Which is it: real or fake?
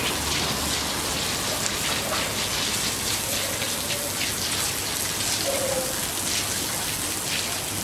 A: real